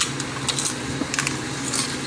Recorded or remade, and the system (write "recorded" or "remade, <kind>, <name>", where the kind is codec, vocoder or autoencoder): recorded